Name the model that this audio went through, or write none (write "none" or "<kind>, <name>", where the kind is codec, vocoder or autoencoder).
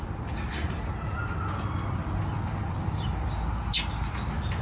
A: none